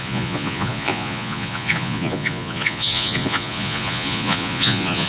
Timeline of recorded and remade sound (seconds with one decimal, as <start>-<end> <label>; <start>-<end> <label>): 0.0-5.1 remade

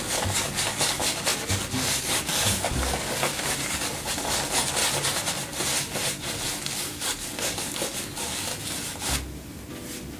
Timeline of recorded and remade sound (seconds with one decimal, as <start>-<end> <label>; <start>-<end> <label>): 0.0-4.8 remade; 4.8-6.6 recorded; 6.6-8.5 remade; 8.5-10.2 recorded

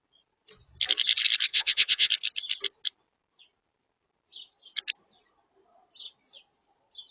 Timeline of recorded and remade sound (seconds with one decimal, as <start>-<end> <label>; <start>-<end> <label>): 0.0-1.5 recorded; 1.5-2.1 remade; 2.1-7.1 recorded